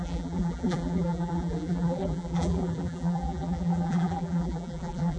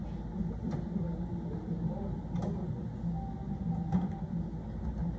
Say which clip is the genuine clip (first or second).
second